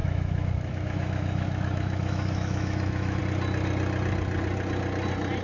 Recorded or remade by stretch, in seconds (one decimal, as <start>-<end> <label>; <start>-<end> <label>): 0.0-3.2 remade; 3.2-5.4 recorded